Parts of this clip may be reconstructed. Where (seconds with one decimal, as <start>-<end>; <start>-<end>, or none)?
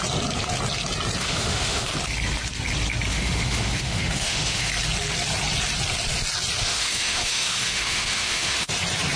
1.2-1.9; 3.1-4.7; 6.6-8.7